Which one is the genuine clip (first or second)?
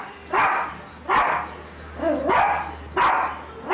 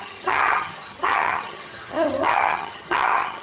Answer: first